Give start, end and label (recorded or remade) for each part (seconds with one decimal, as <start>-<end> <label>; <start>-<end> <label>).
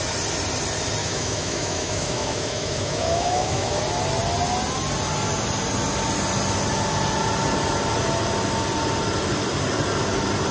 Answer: 0.0-1.0 recorded; 1.0-3.8 remade; 3.8-10.5 recorded